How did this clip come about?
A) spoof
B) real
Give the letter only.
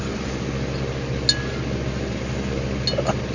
B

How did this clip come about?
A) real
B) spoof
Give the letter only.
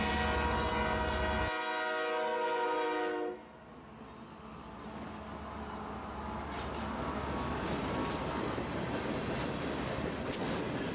A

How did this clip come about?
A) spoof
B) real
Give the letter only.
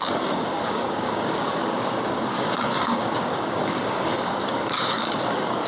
A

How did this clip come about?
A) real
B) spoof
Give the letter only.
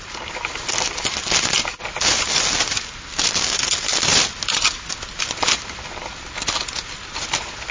A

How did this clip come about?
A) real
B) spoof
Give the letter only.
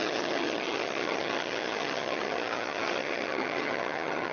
B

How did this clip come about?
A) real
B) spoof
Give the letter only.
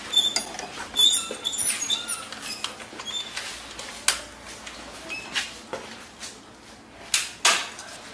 A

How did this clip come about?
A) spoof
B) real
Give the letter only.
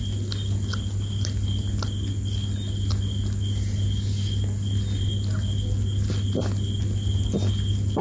B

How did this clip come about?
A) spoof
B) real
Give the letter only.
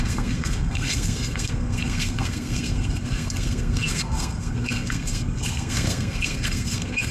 A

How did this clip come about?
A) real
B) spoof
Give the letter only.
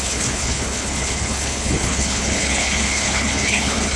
B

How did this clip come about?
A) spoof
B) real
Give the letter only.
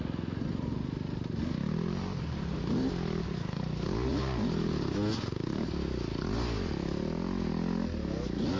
B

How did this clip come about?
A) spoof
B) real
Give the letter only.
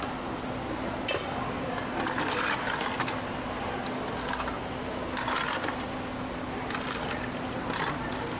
B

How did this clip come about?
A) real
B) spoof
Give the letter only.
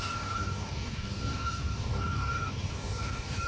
B